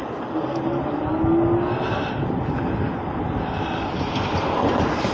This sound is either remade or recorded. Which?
recorded